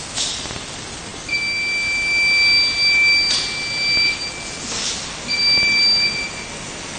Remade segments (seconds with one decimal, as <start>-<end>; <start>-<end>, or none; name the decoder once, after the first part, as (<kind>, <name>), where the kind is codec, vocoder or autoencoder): none